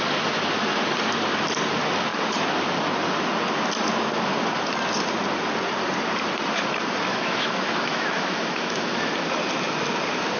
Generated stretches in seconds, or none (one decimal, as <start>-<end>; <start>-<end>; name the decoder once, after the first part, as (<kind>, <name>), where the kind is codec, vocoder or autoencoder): 7.1-9.1 (autoencoder, DAC-VAE)